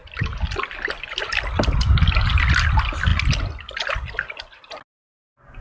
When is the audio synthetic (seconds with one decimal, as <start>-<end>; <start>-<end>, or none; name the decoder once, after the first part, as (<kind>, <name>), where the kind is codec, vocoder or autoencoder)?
none